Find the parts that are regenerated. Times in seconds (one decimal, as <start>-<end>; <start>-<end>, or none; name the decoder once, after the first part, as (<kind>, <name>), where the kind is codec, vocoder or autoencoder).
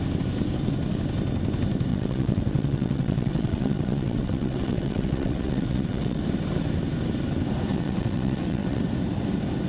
1.9-6.2 (vocoder, WaveNeXt); 7.7-8.8